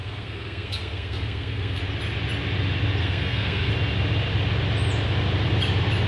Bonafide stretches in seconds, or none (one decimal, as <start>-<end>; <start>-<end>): 1.8-3.0; 3.7-6.1

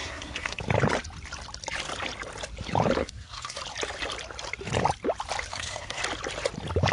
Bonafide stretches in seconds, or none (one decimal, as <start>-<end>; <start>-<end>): 0.6-3.0; 3.6-5.5; 6.0-6.9

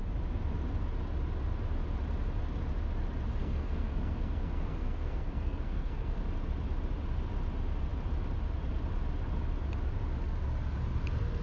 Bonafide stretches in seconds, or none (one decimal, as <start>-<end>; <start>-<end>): 0.0-3.4; 6.2-11.4

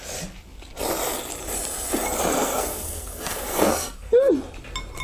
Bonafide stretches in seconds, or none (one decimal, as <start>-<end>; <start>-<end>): 0.0-2.3; 4.3-5.0

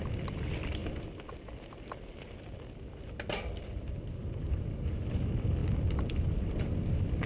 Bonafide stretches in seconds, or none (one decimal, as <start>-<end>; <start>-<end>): 0.0-7.3

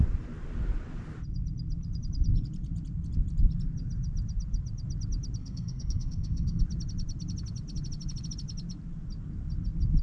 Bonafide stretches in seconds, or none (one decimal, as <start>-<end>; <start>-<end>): 0.0-5.4; 6.6-10.0

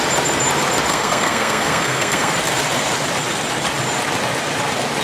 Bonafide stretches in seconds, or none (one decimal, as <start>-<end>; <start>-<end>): 0.0-0.9; 2.3-5.0